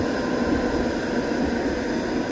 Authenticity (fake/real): real